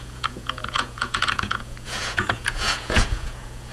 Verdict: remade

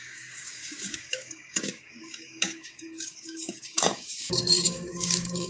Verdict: remade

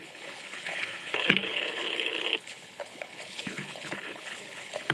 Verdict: remade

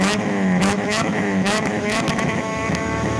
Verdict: remade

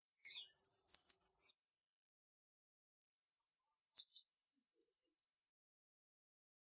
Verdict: remade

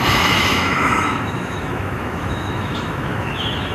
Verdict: remade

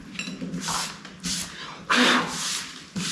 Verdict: recorded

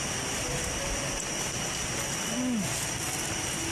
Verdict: recorded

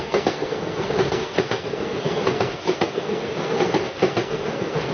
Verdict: remade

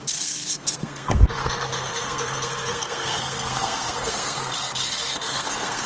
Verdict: remade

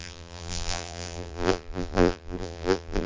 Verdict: remade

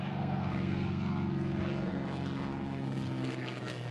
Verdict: remade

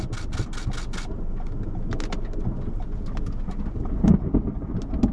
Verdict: recorded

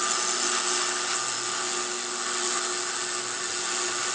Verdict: recorded